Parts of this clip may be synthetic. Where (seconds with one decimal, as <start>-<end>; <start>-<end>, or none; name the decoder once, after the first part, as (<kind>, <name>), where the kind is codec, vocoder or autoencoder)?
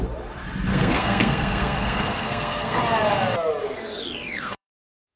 0.7-2.8 (codec, SNAC); 3.6-5.2